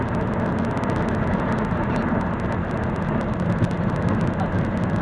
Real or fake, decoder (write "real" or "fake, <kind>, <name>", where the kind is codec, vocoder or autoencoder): real